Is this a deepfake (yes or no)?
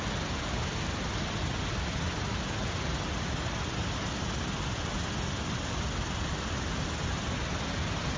no